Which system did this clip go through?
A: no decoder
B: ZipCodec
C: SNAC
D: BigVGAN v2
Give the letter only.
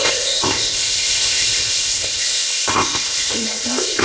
B